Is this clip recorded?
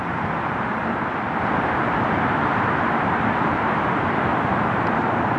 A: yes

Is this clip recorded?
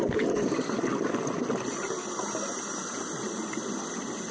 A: yes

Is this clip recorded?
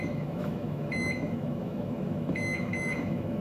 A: no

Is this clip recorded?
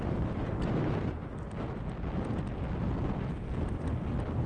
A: yes